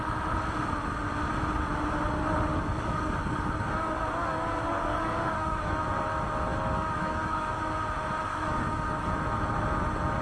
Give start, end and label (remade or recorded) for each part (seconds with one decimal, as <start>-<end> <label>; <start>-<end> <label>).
0.0-2.5 recorded; 2.5-5.8 remade; 5.8-6.5 recorded; 6.5-7.6 remade; 7.6-8.3 recorded; 8.3-9.1 remade; 9.1-10.2 recorded